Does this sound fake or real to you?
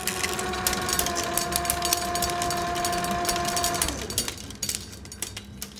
real